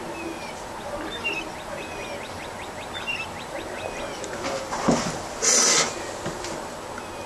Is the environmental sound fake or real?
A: real